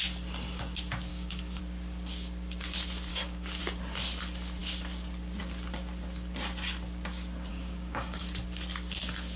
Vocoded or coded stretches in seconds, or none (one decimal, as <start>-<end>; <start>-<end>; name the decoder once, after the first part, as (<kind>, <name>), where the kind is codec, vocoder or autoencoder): 1.1-1.6 (codec, DAC); 3.1-3.6; 7.5-8.2